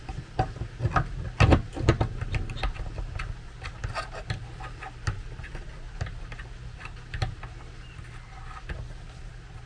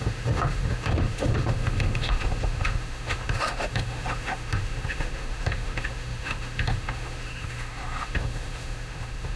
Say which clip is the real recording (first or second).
first